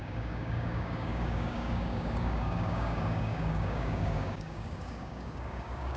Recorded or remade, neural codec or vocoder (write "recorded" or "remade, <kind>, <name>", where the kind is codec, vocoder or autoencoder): remade, codec, DAC